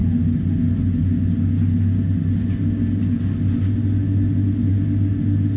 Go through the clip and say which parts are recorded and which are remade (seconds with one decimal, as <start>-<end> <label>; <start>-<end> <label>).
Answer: 0.0-5.6 recorded